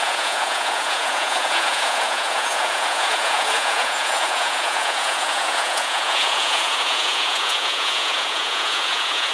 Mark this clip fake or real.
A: fake